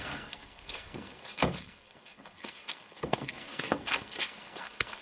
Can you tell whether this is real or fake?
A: fake